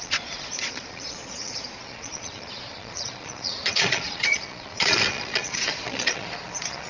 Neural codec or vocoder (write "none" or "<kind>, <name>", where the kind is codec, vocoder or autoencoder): vocoder, Vocos